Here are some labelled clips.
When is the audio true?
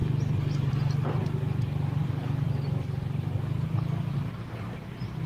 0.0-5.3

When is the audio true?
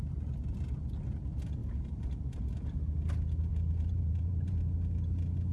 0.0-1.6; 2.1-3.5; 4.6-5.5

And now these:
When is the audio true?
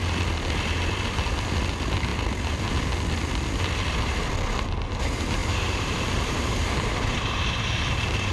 0.0-5.4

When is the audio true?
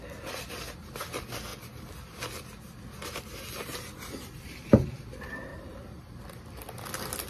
0.0-5.5; 6.2-7.3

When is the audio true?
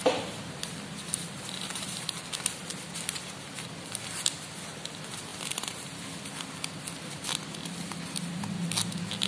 0.0-5.3; 6.3-9.3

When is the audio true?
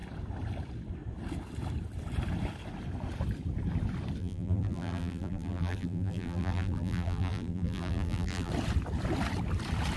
0.0-4.2; 8.5-10.0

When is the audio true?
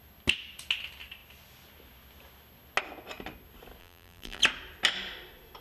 0.0-3.8; 4.4-5.6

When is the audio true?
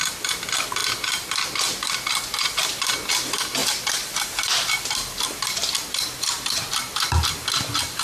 0.0-3.6; 6.7-8.0